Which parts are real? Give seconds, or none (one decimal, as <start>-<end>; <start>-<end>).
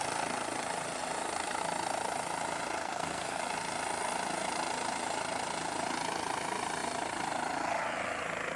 0.0-2.8; 3.4-8.6